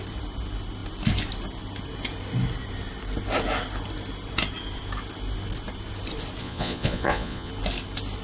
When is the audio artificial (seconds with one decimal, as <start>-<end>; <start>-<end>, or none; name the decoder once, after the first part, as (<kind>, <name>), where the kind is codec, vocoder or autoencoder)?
6.4-7.5 (vocoder, Vocos)